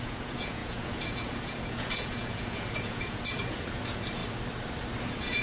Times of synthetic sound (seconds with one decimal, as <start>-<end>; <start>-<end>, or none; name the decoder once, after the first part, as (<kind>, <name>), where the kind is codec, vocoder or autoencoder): 0.0-4.2 (vocoder, Vocos); 5.0-5.4